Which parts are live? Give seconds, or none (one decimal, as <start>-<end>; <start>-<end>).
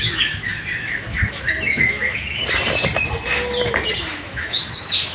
2.4-4.1